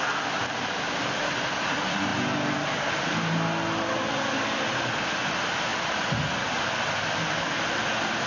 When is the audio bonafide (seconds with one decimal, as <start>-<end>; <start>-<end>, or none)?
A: 0.0-8.3